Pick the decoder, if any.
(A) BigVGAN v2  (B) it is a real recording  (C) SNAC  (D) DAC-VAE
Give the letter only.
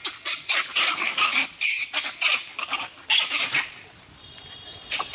B